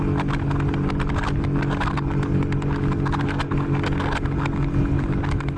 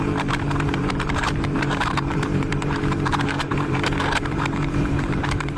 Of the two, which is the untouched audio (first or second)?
first